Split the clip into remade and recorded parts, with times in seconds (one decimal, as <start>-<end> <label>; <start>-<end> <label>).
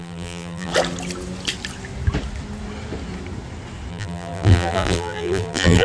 0.0-0.7 remade; 0.7-3.9 recorded; 3.9-5.8 remade